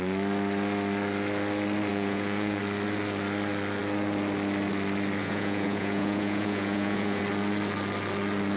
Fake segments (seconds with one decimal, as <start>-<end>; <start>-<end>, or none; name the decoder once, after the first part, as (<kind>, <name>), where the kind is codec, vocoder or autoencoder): 1.9-2.6 (vocoder, Vocos); 5.2-7.2